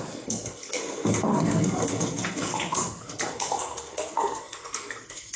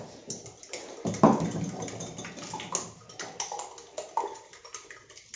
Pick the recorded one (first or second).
second